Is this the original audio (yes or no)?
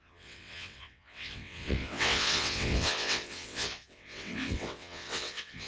no